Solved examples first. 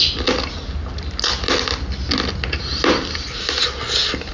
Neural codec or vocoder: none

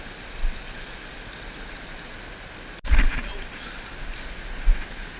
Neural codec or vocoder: none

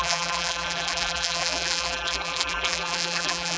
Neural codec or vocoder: vocoder, BigVGAN v2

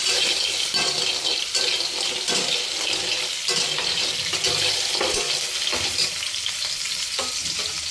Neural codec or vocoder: none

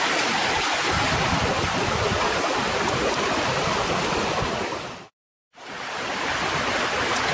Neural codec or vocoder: vocoder, BigVGAN v2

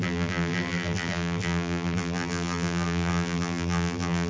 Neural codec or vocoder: vocoder, BigVGAN v2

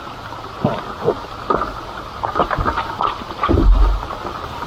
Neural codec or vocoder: none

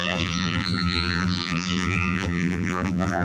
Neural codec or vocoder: vocoder, BigVGAN v2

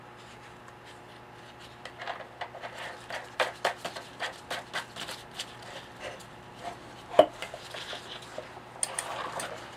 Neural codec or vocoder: none